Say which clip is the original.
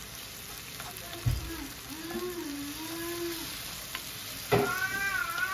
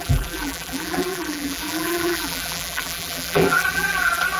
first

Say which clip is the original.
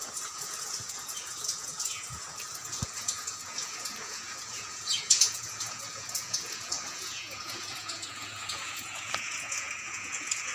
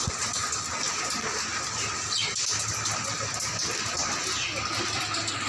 second